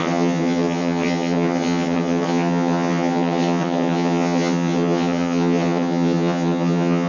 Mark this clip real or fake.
fake